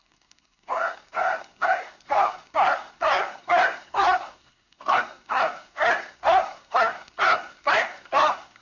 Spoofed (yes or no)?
yes